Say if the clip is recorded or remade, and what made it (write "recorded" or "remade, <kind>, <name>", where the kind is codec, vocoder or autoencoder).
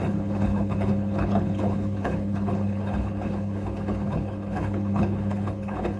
remade, codec, HILCodec